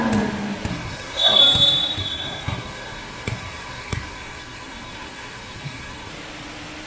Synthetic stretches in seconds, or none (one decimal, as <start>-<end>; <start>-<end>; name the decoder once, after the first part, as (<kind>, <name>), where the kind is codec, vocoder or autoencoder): 0.7-1.4 (codec, SNAC); 2.0-6.1

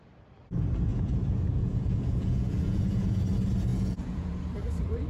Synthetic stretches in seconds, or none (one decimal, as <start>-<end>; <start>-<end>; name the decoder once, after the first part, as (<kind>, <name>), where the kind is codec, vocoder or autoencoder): 0.9-3.2 (vocoder, Vocos); 3.7-4.3